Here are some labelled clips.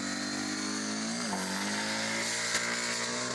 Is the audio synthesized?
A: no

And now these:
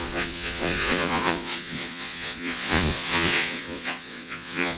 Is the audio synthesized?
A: yes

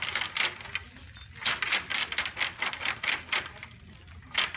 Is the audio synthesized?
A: no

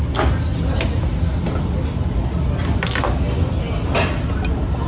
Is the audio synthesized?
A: no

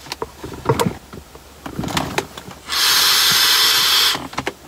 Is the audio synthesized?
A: no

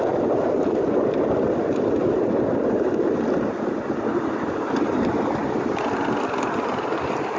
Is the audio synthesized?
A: no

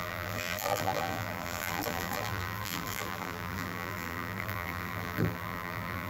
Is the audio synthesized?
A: yes